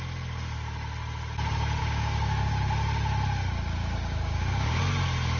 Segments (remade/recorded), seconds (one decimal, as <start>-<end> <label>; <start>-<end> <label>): 0.0-1.8 recorded; 1.8-2.5 remade; 2.5-3.8 recorded; 3.8-4.8 remade; 4.8-5.4 recorded